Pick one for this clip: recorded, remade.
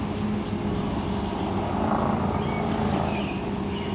recorded